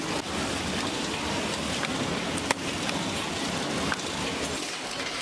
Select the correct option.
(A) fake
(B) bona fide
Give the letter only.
B